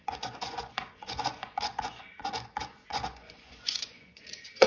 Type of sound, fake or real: fake